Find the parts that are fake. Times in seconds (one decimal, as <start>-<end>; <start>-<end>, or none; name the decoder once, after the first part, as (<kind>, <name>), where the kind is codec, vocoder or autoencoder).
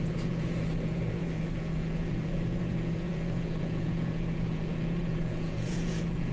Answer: 0.0-6.3 (vocoder, Vocos)